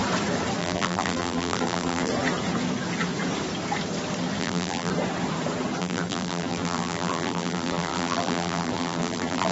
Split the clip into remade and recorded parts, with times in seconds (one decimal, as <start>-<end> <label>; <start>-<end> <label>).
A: 0.0-0.6 recorded; 0.6-2.1 remade; 2.1-4.4 recorded; 4.4-4.9 remade; 4.9-5.8 recorded; 5.8-9.5 remade